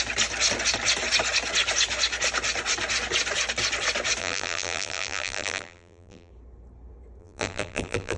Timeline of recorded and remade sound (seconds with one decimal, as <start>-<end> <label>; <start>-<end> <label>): 0.0-4.2 recorded; 4.2-6.3 remade; 6.3-7.2 recorded; 7.2-8.2 remade